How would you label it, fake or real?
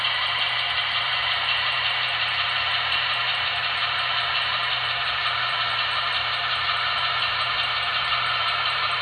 fake